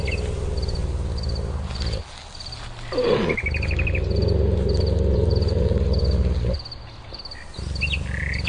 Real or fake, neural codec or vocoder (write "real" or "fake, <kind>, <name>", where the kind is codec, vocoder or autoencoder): real